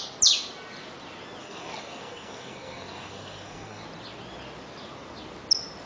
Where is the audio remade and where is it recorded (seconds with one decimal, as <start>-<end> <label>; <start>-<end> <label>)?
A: 0.0-1.4 recorded; 1.4-3.8 remade; 3.8-5.9 recorded